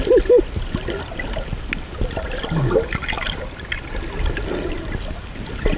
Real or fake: real